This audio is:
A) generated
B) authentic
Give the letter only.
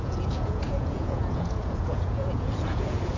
A